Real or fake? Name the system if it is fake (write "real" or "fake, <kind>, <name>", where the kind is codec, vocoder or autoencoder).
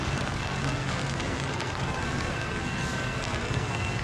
fake, codec, SNAC